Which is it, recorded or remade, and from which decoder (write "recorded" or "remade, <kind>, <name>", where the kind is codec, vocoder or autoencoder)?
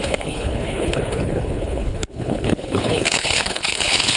remade, codec, HILCodec